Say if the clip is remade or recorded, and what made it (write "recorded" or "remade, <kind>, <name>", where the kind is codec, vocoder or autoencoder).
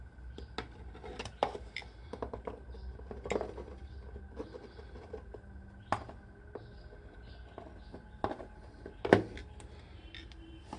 recorded